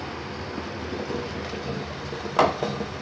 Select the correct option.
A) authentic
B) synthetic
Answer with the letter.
A